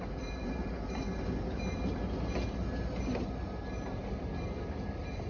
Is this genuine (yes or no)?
yes